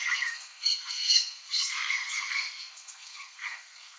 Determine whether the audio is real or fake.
fake